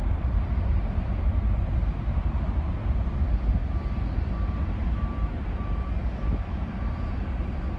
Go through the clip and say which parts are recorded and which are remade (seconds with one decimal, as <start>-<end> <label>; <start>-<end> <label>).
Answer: 0.0-7.8 recorded